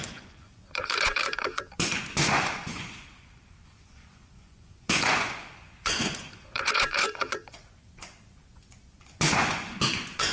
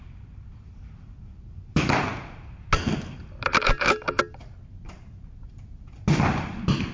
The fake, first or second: first